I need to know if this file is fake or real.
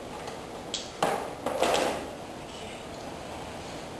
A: real